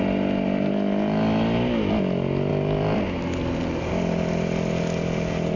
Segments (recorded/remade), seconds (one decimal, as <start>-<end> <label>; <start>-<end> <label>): 0.0-2.5 recorded; 2.5-3.0 remade; 3.0-5.6 recorded